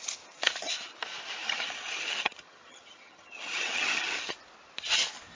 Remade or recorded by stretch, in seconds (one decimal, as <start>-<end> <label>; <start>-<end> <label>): 0.0-1.4 recorded; 1.4-4.3 remade; 4.3-5.4 recorded